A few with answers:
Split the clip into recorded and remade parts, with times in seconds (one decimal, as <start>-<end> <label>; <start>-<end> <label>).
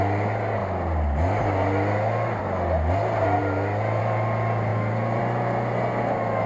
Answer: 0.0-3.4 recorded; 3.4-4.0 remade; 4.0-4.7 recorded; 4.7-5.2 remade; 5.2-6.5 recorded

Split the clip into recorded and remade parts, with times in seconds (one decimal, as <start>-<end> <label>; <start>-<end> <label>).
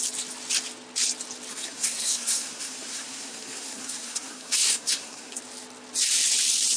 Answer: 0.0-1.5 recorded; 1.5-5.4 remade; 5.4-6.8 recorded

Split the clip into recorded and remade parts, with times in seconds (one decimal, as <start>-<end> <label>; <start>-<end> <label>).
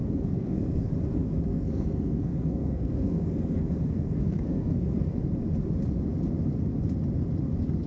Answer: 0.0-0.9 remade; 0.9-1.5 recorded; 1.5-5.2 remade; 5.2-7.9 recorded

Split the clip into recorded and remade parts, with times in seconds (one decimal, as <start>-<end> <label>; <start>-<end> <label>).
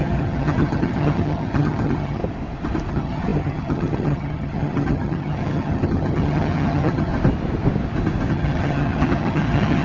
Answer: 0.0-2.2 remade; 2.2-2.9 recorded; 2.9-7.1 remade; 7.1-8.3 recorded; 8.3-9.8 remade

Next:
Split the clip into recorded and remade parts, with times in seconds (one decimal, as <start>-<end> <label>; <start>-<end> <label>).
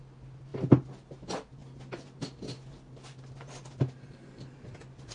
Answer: 0.0-5.1 recorded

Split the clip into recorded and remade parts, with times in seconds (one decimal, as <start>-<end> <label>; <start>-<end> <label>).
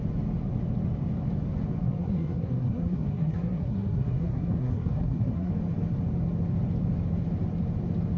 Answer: 0.0-1.8 recorded; 1.8-5.5 remade; 5.5-8.2 recorded